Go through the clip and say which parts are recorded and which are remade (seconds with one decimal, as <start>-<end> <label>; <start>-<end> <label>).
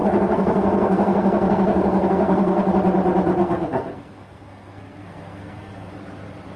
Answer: 0.0-2.7 remade; 2.7-3.4 recorded; 3.4-5.9 remade; 5.9-6.6 recorded